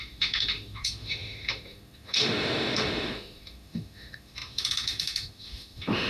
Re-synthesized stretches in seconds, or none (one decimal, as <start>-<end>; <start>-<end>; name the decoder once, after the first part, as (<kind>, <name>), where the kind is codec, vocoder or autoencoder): 0.0-6.1 (autoencoder, DAC-VAE)